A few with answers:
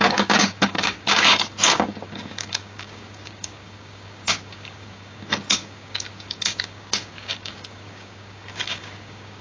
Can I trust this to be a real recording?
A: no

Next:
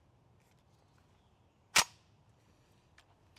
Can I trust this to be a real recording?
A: yes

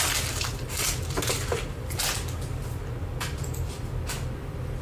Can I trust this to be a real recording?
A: yes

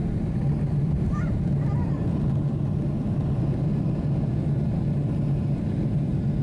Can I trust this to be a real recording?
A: yes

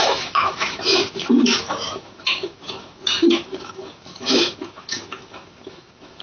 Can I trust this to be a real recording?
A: no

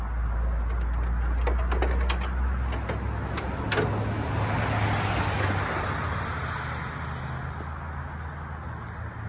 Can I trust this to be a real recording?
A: yes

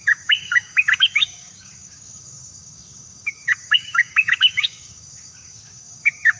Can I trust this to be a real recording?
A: no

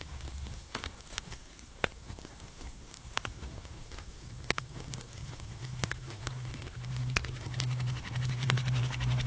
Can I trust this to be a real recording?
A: no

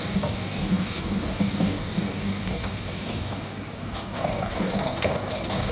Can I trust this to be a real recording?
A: no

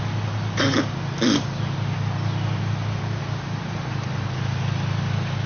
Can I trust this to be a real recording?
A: yes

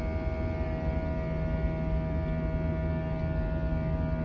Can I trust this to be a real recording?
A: yes